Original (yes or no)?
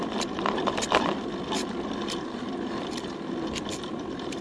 yes